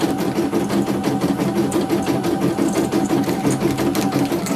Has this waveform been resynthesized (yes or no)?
no